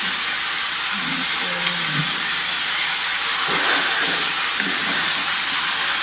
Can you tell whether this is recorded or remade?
recorded